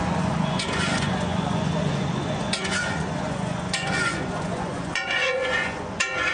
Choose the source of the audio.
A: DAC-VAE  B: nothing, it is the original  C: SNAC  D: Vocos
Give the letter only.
D